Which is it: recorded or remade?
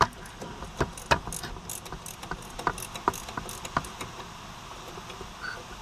recorded